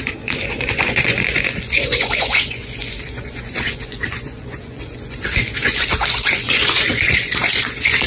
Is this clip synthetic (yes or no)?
yes